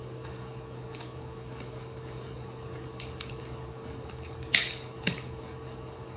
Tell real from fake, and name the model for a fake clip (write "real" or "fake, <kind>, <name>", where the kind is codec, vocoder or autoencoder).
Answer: fake, codec, DAC